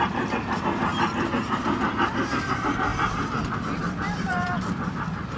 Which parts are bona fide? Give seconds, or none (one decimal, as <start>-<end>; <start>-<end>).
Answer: 0.9-2.4